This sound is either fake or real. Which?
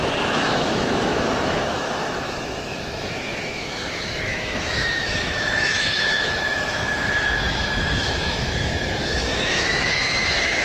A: fake